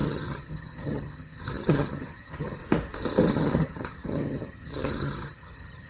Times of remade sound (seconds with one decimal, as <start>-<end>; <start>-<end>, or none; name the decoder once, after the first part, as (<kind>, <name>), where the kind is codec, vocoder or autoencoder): 0.0-2.6 (vocoder, HiFi-GAN); 3.3-5.9